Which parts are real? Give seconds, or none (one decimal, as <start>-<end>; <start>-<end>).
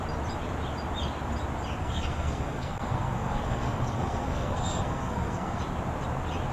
0.0-1.8; 5.6-6.5